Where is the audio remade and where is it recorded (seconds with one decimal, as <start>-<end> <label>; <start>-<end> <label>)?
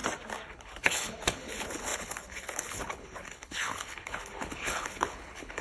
0.0-0.5 recorded; 0.5-5.6 remade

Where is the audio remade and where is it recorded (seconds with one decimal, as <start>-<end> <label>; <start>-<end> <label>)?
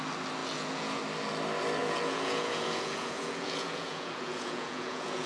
0.0-0.4 recorded; 0.4-1.0 remade; 1.0-1.8 recorded; 1.8-5.3 remade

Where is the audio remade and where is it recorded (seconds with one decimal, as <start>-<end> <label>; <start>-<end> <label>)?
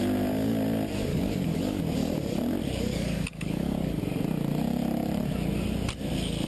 0.0-1.1 recorded; 1.1-1.8 remade; 1.8-2.9 recorded; 2.9-4.0 remade; 4.0-6.5 recorded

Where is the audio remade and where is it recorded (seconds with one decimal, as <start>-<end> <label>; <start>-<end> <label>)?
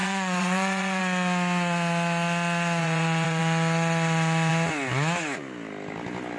0.0-1.0 remade; 1.0-2.8 recorded; 2.8-3.4 remade; 3.4-6.4 recorded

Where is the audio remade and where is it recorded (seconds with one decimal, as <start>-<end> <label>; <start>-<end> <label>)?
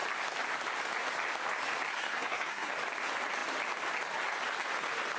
0.0-1.9 recorded; 1.9-2.7 remade; 2.7-5.2 recorded